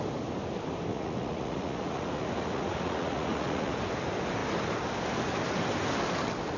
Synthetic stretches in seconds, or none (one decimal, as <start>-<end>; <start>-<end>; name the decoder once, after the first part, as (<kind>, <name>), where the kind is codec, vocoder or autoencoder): 0.9-3.8 (vocoder, Vocos)